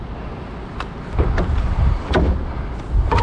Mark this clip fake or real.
real